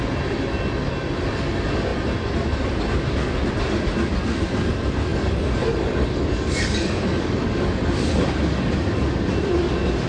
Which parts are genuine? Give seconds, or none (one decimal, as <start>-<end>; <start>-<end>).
0.0-5.1; 8.3-10.1